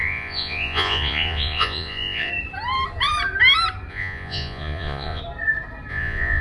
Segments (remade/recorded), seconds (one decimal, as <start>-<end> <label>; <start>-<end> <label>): 0.0-2.3 remade; 2.3-3.9 recorded; 3.9-5.2 remade; 5.2-5.9 recorded; 5.9-6.4 remade